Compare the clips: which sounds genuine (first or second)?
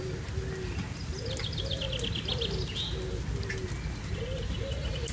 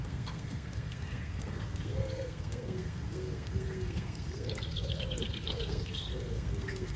first